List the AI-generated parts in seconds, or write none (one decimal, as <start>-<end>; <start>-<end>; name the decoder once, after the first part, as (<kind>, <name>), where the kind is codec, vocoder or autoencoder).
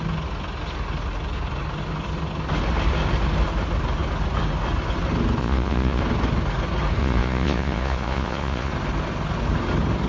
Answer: 5.4-6.0 (vocoder, Vocos); 7.0-8.7